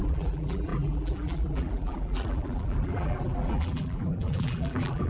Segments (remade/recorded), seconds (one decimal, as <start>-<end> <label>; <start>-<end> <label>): 0.0-5.1 remade